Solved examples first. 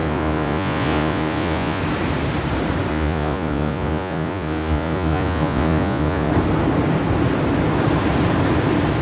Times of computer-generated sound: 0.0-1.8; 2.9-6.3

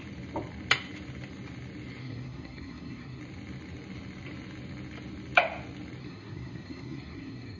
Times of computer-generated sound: 2.0-3.2; 6.0-7.6

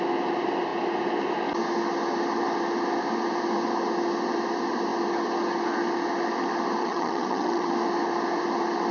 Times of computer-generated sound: 6.8-7.7

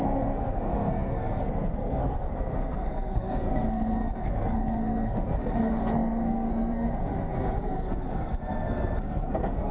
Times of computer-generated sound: 0.0-9.7

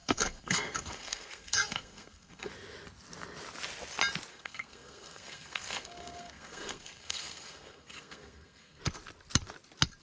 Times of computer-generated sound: 0.0-2.5; 4.3-8.8

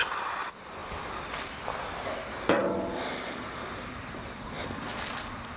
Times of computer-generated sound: 0.8-1.4; 2.6-4.6